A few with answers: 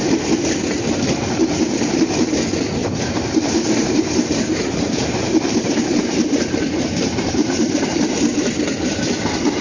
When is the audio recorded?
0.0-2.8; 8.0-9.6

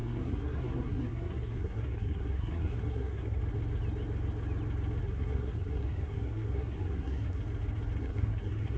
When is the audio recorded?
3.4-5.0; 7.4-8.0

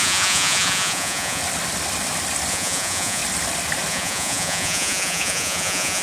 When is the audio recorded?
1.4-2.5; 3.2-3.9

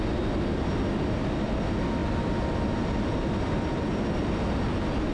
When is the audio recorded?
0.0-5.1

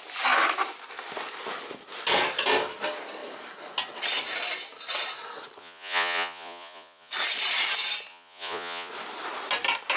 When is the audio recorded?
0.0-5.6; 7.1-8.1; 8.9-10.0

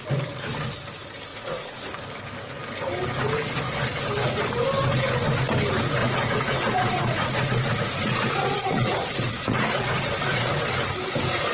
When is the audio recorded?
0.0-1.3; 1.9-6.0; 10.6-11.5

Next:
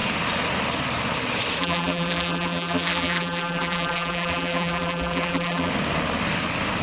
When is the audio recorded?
0.0-1.6; 5.7-6.8